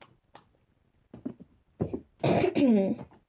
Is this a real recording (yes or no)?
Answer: yes